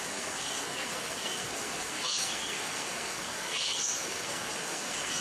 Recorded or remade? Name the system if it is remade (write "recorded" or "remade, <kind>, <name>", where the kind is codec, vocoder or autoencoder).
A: remade, codec, SNAC